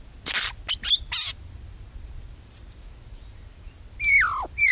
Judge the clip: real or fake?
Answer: real